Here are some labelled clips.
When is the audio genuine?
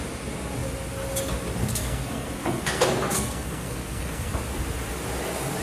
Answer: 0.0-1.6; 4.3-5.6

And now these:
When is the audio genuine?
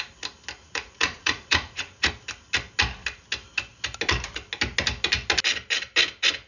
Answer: 0.0-0.6; 2.1-6.5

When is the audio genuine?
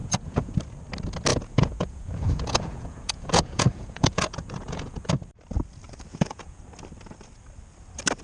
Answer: 0.6-1.3; 5.1-6.1; 6.6-8.2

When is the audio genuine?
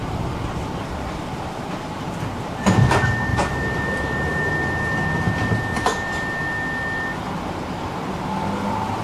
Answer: 0.5-3.3; 4.5-9.0